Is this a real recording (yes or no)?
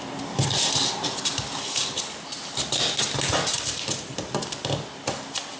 yes